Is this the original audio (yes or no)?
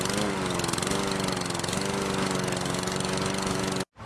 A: yes